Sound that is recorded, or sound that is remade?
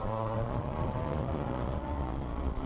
remade